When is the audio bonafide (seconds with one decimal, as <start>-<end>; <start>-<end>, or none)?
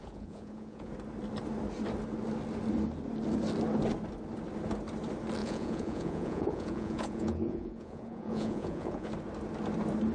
0.9-5.4; 9.1-10.1